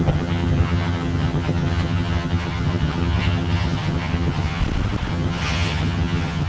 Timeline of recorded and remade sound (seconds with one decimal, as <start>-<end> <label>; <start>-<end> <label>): 0.0-4.6 remade; 4.6-5.1 recorded; 5.1-6.5 remade